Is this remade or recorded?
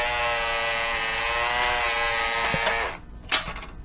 recorded